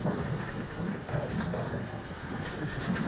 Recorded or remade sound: remade